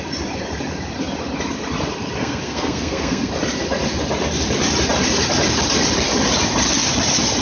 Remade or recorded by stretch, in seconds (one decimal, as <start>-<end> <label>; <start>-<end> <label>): 0.0-2.2 recorded; 2.2-3.3 remade; 3.3-7.4 recorded